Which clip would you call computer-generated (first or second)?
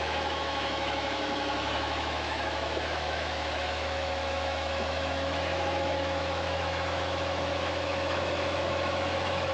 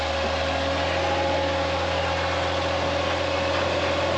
first